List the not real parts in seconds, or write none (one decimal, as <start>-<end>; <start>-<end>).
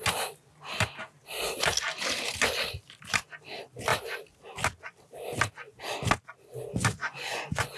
7.0-7.8